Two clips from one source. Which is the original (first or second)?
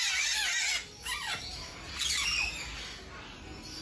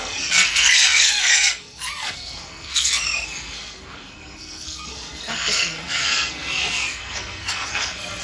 first